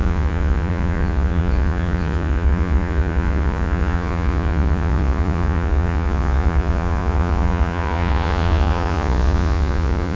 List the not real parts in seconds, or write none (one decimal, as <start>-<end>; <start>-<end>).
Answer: 0.0-10.2